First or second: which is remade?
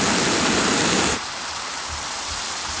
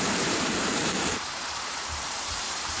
second